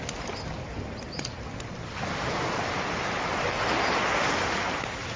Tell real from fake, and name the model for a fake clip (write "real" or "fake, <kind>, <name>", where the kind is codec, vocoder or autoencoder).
real